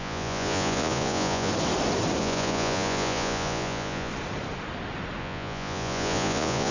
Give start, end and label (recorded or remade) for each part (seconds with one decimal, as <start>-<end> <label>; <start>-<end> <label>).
0.0-1.5 remade; 1.5-2.2 recorded; 2.2-4.1 remade; 4.1-5.2 recorded; 5.2-6.7 remade